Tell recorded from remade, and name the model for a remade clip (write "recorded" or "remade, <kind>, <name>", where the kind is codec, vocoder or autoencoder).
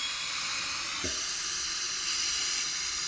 recorded